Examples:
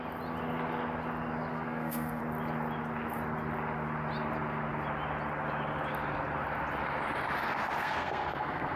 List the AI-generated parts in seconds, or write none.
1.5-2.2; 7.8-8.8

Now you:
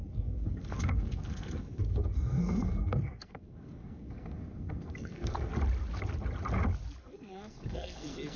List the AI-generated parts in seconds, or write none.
0.0-5.5; 7.0-8.4

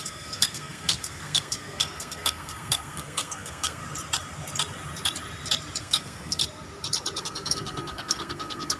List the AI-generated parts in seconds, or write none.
0.0-3.8; 5.8-6.4; 7.2-8.8

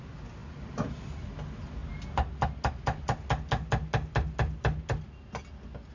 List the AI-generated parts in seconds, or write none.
none

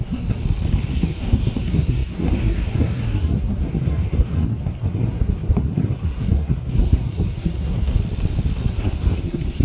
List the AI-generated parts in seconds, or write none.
0.0-0.4; 0.9-8.0; 8.7-9.6